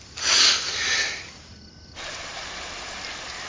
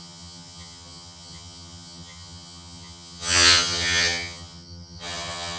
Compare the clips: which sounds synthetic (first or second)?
second